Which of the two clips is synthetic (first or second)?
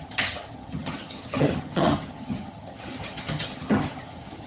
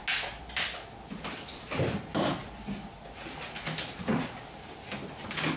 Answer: first